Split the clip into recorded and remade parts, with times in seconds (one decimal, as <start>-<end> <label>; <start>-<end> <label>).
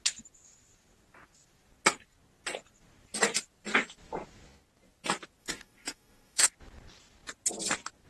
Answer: 0.0-5.4 recorded; 5.4-6.5 remade; 6.5-8.1 recorded